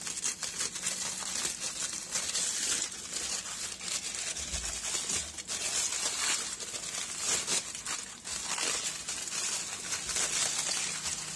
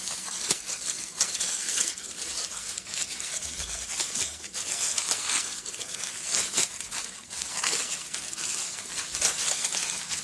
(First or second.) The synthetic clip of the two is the second